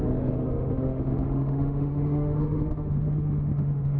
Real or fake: fake